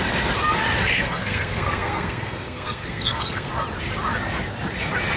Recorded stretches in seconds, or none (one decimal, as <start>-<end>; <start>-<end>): 0.0-0.9; 3.5-5.2